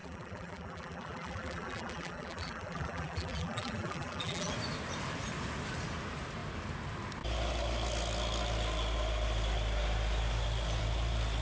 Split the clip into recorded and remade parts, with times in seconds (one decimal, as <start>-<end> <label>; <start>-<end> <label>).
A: 0.0-4.5 remade; 4.5-11.4 recorded